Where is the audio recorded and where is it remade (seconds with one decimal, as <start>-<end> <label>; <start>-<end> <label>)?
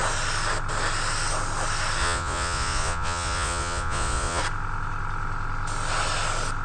0.0-2.0 recorded; 2.0-4.4 remade; 4.4-6.6 recorded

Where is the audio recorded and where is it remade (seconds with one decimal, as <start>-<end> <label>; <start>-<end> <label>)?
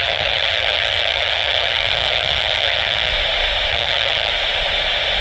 0.0-3.1 remade; 3.1-3.7 recorded; 3.7-4.3 remade; 4.3-5.2 recorded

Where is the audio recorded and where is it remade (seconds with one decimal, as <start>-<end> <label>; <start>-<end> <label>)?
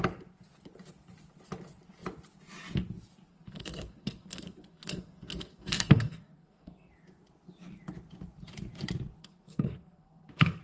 0.0-3.3 recorded; 3.3-6.9 remade; 6.9-9.2 recorded; 9.2-10.6 remade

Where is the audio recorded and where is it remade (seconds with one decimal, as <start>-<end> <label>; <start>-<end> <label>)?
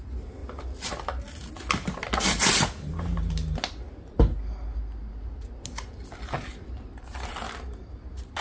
0.0-8.4 recorded